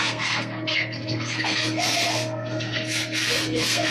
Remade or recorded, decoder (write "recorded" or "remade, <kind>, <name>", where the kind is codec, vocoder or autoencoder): remade, codec, SNAC